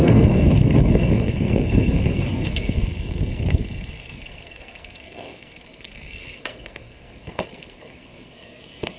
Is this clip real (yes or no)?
no